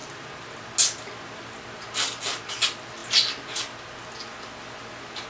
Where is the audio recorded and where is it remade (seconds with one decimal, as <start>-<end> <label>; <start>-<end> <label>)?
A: 0.0-5.3 recorded